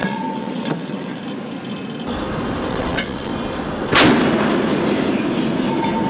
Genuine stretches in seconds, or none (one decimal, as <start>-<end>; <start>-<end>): 1.2-2.7; 3.3-6.1